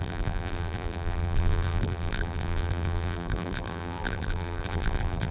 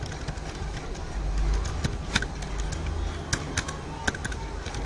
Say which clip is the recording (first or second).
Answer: second